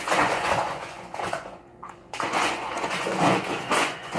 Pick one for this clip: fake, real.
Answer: fake